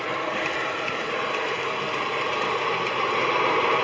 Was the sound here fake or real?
real